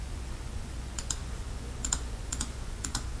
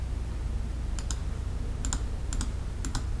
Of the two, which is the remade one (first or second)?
first